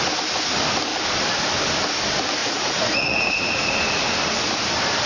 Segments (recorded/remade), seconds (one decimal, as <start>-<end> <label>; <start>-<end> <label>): 0.0-2.4 recorded; 2.4-3.8 remade; 3.8-5.1 recorded